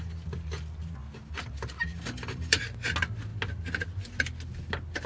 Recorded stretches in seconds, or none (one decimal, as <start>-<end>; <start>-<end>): 0.0-1.9; 2.6-5.1